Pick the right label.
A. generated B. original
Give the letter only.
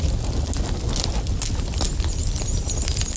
B